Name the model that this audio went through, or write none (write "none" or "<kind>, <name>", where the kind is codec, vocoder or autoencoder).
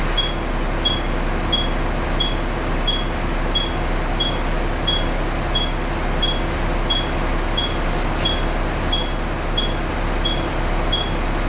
none